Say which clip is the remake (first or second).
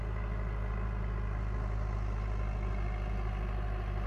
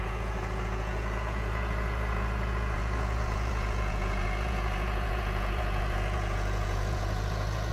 second